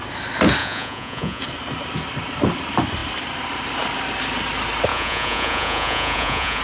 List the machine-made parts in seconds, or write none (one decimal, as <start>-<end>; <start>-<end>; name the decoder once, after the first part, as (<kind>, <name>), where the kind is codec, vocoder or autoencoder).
0.6-1.4 (vocoder, Vocos); 4.9-6.6